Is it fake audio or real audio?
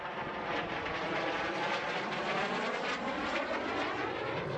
real